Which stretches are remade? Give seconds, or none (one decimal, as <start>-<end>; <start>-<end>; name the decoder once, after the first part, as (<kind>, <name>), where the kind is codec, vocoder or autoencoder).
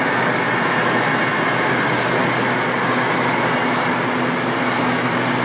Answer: none